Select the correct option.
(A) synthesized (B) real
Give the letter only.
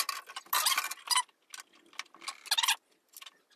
B